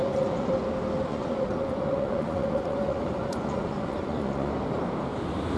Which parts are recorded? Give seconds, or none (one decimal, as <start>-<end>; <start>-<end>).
0.5-1.1; 4.5-5.6